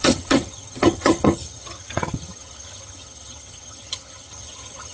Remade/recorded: remade